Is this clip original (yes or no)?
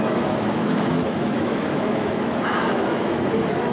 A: no